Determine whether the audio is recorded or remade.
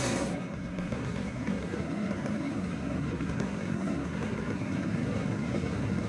remade